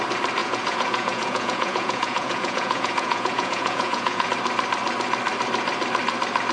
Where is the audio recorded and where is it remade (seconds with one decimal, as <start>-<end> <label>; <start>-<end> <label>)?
0.0-0.4 recorded; 0.4-4.3 remade; 4.3-6.5 recorded